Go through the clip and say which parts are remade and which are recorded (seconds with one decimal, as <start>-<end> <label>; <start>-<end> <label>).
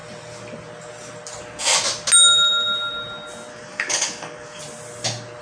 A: 0.0-3.5 recorded; 3.5-4.6 remade; 4.6-5.4 recorded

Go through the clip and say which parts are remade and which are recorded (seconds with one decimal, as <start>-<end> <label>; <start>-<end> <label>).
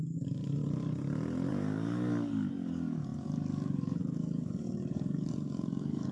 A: 0.0-0.6 remade; 0.6-1.5 recorded; 1.5-6.1 remade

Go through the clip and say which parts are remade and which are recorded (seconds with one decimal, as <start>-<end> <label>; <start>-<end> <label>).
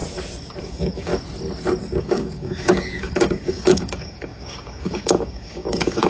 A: 0.0-0.6 recorded; 0.6-1.1 remade; 1.1-2.0 recorded; 2.0-6.1 remade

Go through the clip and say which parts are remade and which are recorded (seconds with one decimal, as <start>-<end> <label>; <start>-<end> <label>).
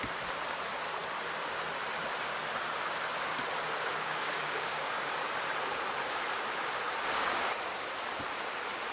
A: 0.0-3.9 recorded; 3.9-5.1 remade; 5.1-8.9 recorded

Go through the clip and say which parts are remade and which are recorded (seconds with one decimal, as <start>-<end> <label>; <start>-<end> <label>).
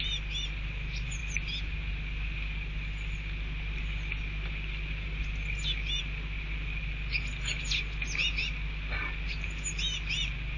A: 0.0-10.6 recorded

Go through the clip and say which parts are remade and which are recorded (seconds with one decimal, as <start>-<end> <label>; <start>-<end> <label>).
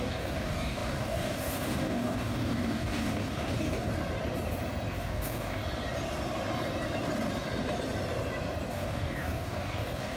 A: 0.0-3.9 remade; 3.9-4.9 recorded; 4.9-5.6 remade; 5.6-8.7 recorded; 8.7-10.2 remade